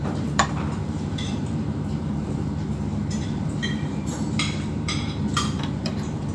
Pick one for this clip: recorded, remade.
remade